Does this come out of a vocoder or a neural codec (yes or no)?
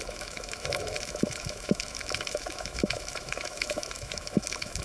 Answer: yes